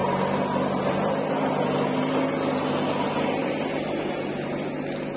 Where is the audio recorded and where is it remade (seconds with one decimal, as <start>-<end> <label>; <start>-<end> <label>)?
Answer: 0.0-5.2 recorded